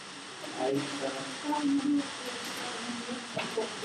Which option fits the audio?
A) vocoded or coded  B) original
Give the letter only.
B